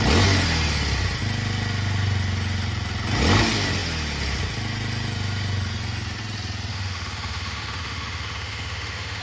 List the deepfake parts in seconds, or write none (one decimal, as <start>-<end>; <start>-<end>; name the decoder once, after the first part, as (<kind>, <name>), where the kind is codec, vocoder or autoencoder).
6.7-9.2 (autoencoder, DAC-VAE)